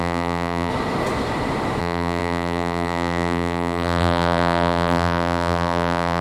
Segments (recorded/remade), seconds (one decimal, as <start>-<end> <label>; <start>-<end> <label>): 0.0-0.7 remade; 0.7-1.8 recorded; 1.8-6.2 remade